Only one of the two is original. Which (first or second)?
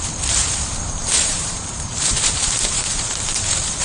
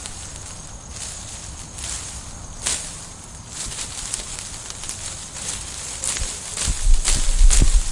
second